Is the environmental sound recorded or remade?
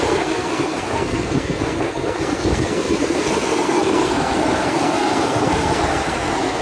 remade